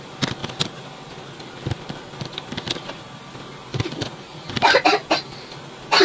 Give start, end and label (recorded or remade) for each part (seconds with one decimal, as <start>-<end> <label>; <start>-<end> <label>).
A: 0.0-3.7 recorded; 3.7-4.5 remade; 4.5-6.0 recorded